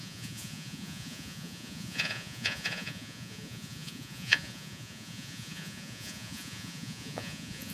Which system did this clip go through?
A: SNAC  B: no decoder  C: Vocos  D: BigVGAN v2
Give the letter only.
C